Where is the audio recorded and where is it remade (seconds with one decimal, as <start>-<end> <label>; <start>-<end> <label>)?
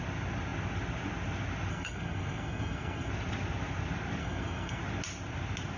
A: 0.0-1.7 recorded; 1.7-3.1 remade; 3.1-4.2 recorded; 4.2-4.8 remade; 4.8-5.8 recorded